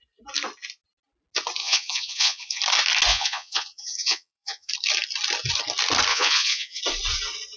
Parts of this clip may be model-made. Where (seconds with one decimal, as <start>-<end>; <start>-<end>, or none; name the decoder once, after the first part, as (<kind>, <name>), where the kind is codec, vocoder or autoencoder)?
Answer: 1.6-2.6 (vocoder, Vocos); 3.1-4.7; 6.1-6.8